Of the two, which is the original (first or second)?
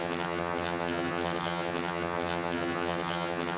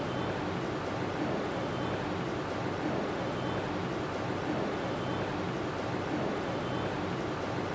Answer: second